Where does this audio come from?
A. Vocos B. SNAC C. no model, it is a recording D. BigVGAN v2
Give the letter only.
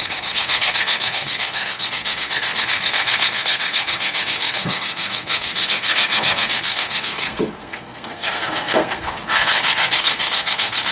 B